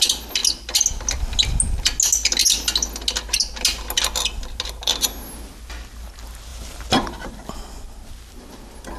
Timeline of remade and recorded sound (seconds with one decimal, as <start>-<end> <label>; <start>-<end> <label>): 0.0-6.5 recorded; 6.5-7.5 remade; 7.5-9.0 recorded